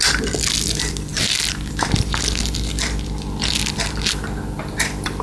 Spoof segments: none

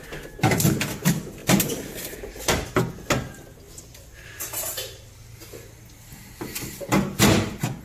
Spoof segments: 1.4-2.7 (vocoder, BigVGAN v2)